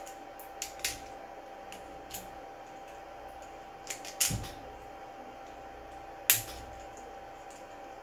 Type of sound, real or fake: real